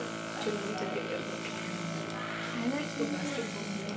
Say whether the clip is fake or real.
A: real